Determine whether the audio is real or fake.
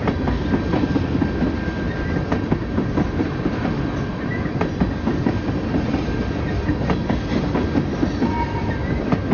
real